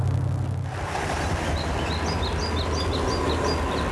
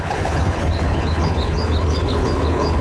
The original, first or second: first